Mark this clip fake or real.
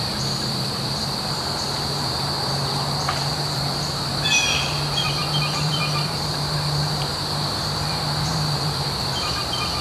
fake